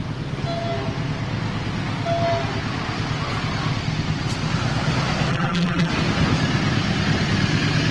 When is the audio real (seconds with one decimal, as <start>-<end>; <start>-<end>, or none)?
0.0-5.3; 5.9-7.9